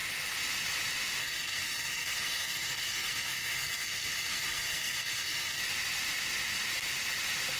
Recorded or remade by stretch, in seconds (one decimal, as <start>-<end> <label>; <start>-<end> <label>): 0.0-1.2 recorded; 1.2-5.6 remade; 5.6-7.6 recorded